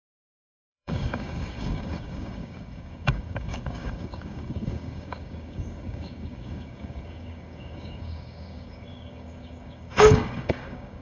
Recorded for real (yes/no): no